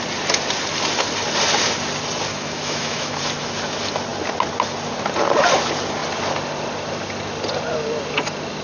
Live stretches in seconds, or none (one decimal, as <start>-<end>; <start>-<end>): 0.0-2.3; 3.2-8.6